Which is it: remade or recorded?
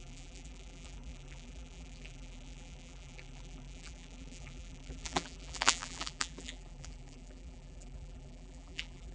remade